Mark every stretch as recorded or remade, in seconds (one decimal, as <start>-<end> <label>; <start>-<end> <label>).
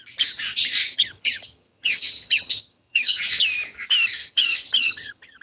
0.0-0.8 recorded; 0.8-3.3 remade; 3.3-4.2 recorded; 4.2-5.4 remade